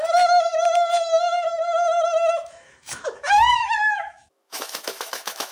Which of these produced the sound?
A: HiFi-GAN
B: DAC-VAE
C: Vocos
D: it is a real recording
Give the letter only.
B